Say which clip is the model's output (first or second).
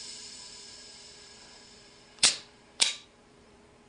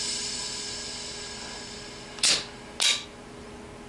first